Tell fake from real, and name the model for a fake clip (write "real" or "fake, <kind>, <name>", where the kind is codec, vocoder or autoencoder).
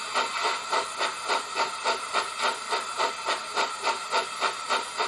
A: real